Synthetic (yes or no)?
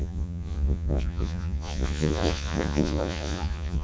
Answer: yes